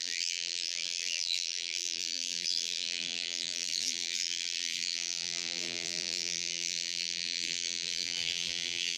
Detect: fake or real fake